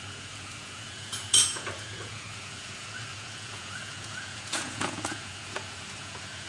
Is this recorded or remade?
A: remade